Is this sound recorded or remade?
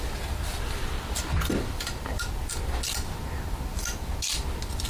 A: recorded